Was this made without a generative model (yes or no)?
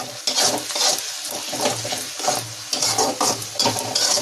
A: yes